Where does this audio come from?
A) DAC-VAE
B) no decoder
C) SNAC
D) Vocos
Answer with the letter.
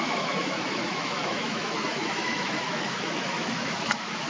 A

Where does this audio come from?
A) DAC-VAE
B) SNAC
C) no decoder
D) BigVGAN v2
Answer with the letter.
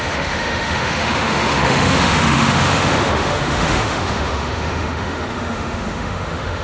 A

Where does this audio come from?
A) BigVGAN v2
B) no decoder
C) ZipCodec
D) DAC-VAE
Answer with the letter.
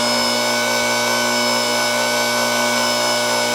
B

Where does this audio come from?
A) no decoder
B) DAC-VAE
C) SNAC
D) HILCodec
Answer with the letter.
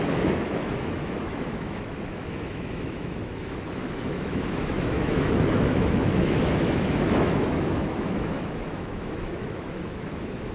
B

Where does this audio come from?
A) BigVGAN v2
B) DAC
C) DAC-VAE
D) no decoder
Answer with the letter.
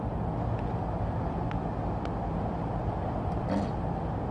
D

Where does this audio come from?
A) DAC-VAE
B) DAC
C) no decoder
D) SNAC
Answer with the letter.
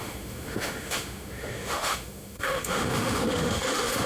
A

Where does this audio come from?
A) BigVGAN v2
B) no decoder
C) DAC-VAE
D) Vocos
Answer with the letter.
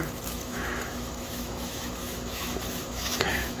C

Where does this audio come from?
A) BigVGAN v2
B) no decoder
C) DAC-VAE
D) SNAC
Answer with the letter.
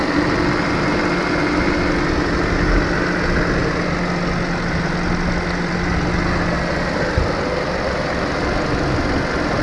B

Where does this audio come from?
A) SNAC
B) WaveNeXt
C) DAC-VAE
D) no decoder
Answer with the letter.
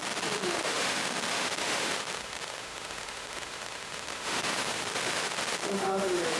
C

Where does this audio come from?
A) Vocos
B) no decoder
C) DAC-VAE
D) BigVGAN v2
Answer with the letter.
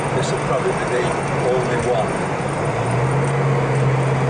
B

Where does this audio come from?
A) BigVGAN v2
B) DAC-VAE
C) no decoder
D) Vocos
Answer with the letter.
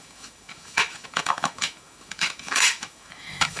B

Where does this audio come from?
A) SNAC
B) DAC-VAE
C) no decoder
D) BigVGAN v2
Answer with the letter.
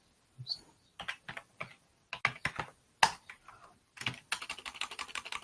C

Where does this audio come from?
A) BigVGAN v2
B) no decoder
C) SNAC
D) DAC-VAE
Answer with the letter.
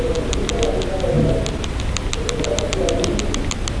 B